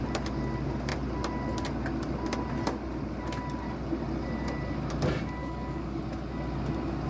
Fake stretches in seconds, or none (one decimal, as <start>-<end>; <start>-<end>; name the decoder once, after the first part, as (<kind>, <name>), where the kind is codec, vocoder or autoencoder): 5.4-6.0 (codec, DAC)